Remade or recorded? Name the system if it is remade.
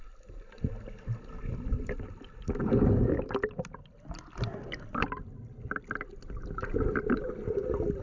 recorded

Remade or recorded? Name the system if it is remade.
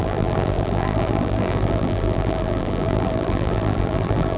remade, vocoder, BigVGAN v2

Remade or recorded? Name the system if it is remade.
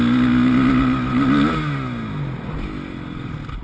recorded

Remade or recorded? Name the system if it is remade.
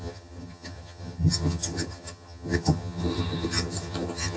remade, vocoder, HiFi-GAN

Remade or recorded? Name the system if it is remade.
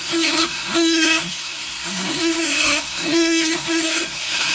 remade, codec, SNAC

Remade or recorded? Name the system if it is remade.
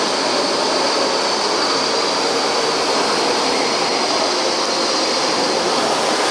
recorded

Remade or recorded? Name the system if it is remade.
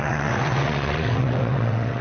remade, vocoder, WaveNeXt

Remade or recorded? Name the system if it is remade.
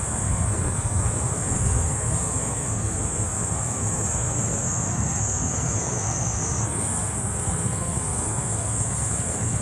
remade, codec, SNAC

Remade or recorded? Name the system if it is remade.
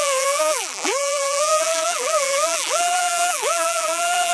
remade, vocoder, BigVGAN v2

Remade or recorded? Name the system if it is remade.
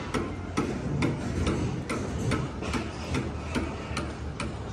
recorded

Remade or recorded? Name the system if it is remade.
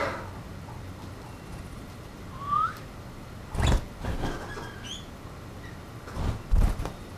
recorded